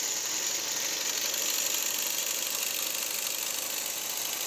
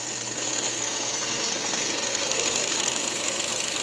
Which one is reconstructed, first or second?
second